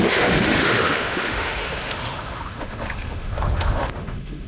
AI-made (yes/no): yes